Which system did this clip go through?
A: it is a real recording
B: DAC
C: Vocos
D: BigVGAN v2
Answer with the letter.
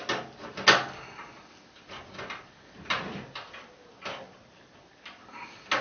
A